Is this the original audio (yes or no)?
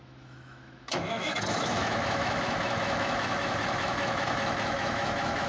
no